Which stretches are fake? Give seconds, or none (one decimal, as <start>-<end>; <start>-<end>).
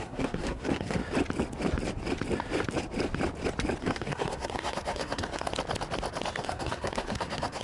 0.0-1.0; 3.8-5.5; 6.4-7.6